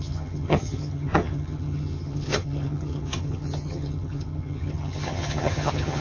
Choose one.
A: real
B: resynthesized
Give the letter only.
B